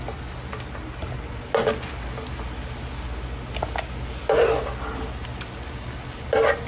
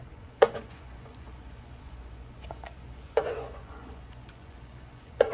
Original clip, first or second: first